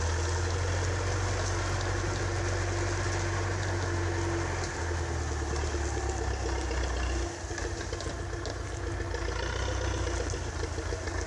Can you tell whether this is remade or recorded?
recorded